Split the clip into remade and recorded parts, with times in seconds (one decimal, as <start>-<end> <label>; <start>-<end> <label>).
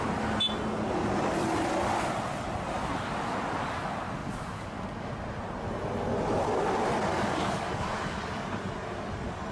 0.0-4.2 recorded; 4.2-5.1 remade; 5.1-7.1 recorded; 7.1-8.3 remade; 8.3-9.5 recorded